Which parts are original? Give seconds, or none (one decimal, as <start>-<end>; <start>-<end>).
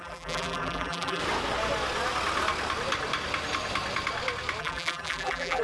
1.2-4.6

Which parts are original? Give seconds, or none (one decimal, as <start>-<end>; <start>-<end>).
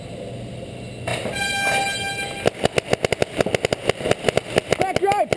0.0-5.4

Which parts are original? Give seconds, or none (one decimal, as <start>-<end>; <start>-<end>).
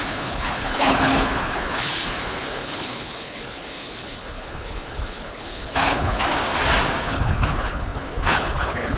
6.2-7.0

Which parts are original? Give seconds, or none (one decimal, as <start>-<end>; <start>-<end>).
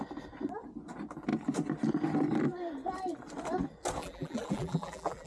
0.0-4.0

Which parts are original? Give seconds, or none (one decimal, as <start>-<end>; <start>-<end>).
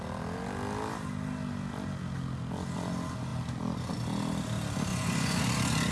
0.0-4.9; 5.4-5.9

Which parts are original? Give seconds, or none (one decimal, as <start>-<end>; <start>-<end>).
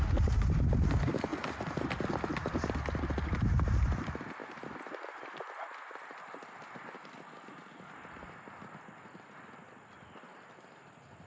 0.0-11.3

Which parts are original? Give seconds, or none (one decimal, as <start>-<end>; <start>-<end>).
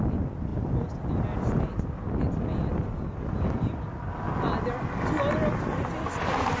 0.0-6.6